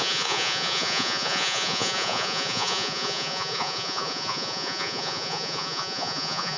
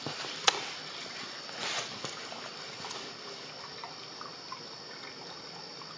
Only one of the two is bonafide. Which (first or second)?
second